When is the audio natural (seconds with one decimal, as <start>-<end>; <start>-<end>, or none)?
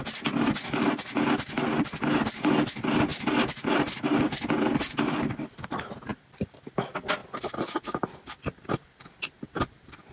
0.0-10.1